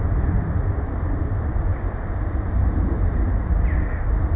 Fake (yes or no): no